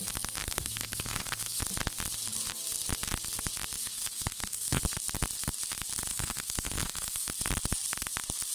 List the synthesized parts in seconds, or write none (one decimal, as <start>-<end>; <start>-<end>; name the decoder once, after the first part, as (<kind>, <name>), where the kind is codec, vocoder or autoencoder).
0.4-1.6 (codec, SNAC); 3.8-4.8; 6.1-7.3